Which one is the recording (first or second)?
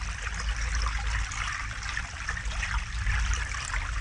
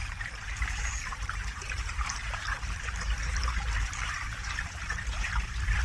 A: first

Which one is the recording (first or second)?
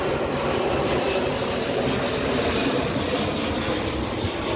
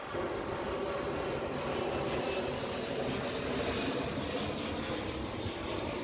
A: second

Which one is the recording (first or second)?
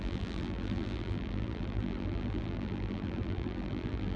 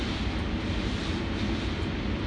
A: second